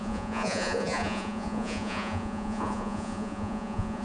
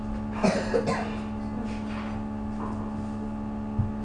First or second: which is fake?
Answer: first